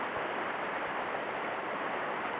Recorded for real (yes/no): yes